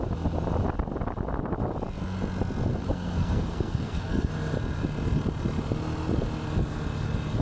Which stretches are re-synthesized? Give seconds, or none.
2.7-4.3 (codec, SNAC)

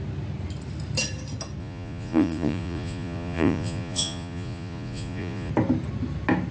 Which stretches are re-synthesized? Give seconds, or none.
1.6-5.5 (vocoder, Vocos)

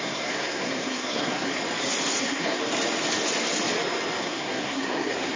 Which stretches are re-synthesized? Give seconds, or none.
0.0-1.6 (codec, SNAC); 2.2-2.6; 4.2-5.4

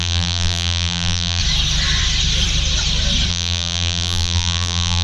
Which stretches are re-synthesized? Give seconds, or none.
0.0-1.4 (vocoder, BigVGAN v2); 3.3-5.0